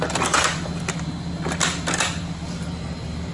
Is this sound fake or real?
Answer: real